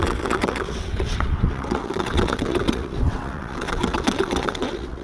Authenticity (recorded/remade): remade